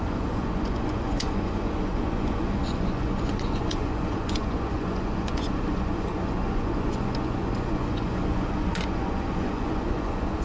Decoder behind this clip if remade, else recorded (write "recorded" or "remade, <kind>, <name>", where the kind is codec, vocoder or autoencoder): remade, vocoder, Vocos